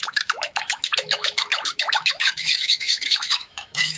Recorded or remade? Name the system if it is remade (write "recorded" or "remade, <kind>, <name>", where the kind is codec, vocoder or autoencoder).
remade, autoencoder, DAC-VAE